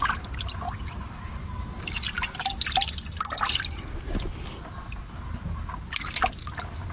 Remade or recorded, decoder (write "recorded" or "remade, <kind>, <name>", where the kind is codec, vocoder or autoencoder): recorded